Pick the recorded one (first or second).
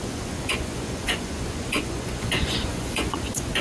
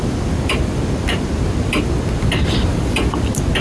second